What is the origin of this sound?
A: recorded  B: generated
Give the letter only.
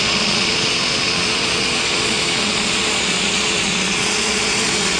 B